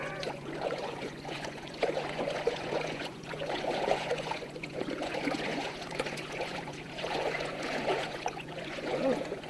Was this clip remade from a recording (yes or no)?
yes